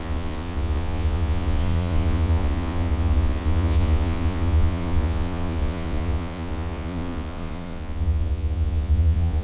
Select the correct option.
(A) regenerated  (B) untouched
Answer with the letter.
A